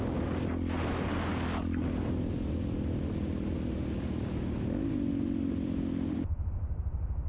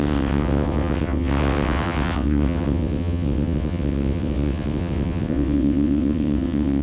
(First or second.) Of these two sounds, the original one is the first